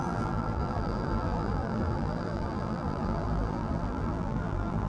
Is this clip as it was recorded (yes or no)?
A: no